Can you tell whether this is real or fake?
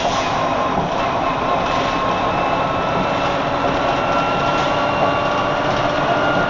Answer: real